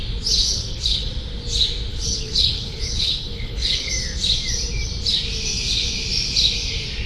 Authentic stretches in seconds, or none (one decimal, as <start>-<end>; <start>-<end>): 0.0-0.4; 1.1-1.9; 3.9-7.1